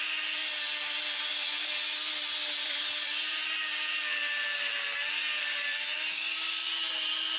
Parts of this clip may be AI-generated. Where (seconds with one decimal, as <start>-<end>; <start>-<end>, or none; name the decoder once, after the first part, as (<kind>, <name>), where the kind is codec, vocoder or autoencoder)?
0.0-0.4 (vocoder, BigVGAN v2); 2.6-3.4; 5.4-6.6